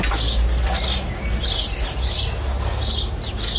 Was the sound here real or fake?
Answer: real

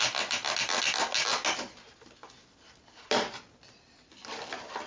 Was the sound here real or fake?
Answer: real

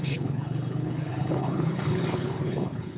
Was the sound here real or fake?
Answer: fake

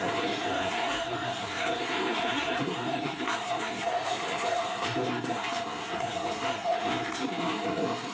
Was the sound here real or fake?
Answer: fake